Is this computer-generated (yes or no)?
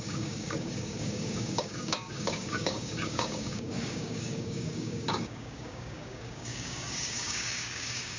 yes